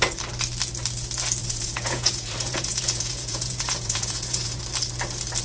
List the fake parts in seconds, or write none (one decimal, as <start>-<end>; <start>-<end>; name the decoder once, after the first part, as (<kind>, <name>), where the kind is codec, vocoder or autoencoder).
1.4-4.6 (vocoder, Vocos)